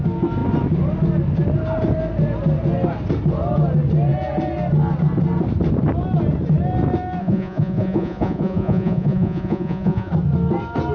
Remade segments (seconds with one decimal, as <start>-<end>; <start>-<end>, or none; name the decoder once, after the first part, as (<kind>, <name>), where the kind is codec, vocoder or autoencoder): 7.2-10.1 (vocoder, Vocos)